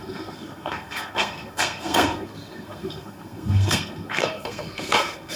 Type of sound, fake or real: fake